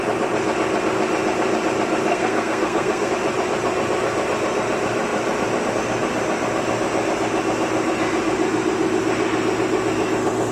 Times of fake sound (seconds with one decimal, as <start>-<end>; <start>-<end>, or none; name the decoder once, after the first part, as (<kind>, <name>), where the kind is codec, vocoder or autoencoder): 2.1-3.1 (codec, SNAC)